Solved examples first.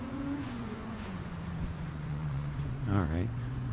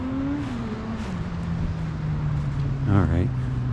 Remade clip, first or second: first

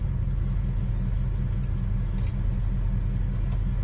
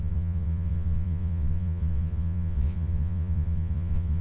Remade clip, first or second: second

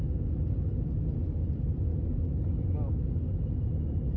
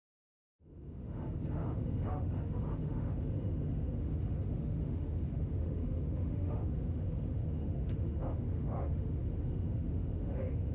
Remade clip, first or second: second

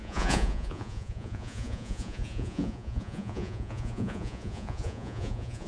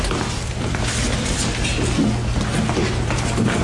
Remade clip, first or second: first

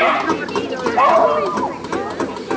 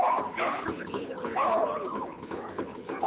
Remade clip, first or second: second